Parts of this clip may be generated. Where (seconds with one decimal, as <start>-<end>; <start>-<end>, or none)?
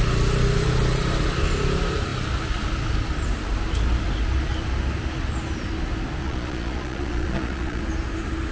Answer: 6.2-7.8